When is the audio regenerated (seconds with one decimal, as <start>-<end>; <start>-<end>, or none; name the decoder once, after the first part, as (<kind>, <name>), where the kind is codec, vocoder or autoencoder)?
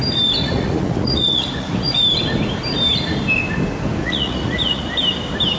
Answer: 0.4-1.9 (vocoder, Vocos); 4.0-4.9